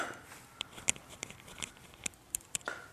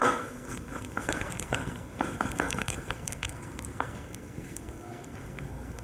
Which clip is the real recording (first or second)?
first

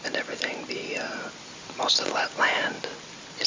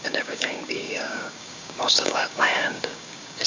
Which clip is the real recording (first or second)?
first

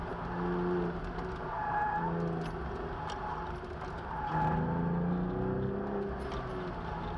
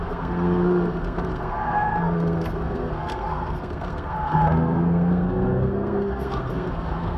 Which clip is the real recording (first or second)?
first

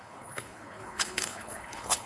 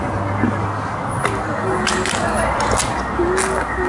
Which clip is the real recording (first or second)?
second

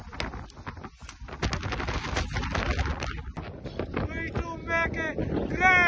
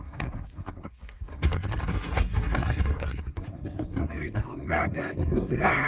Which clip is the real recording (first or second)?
first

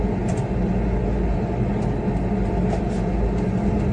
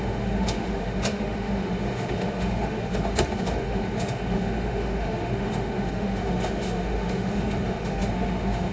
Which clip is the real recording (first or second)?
first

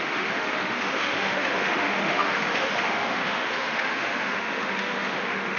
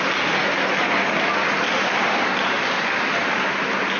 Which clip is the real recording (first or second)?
second